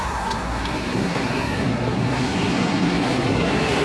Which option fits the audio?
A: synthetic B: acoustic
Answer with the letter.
A